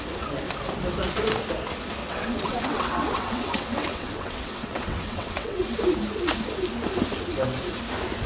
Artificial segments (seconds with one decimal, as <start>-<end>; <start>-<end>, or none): 2.0-5.8